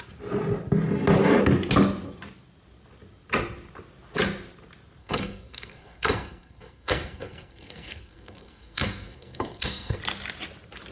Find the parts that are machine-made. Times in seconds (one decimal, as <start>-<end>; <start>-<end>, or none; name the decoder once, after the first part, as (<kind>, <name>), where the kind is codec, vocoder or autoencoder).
5.0-10.0 (codec, SNAC)